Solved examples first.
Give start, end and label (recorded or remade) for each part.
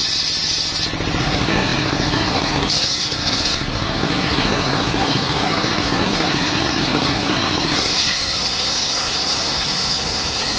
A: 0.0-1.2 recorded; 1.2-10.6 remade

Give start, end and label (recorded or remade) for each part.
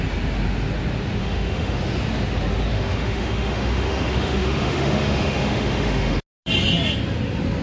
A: 0.0-1.2 recorded; 1.2-1.8 remade; 1.8-2.7 recorded; 2.7-6.2 remade; 6.2-7.6 recorded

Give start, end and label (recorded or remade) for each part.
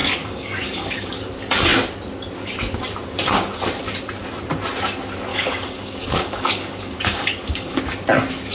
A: 0.0-1.1 remade; 1.1-5.3 recorded; 5.3-7.8 remade; 7.8-8.5 recorded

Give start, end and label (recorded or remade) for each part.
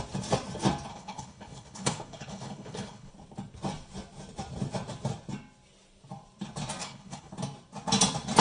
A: 0.0-0.9 recorded; 0.9-3.1 remade; 3.1-6.8 recorded; 6.8-7.3 remade; 7.3-8.4 recorded